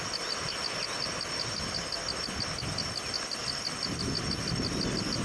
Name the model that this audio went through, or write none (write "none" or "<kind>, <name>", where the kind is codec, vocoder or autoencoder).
none